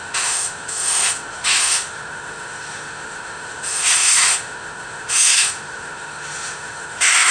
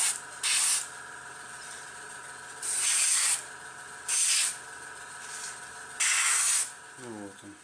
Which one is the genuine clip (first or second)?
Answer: second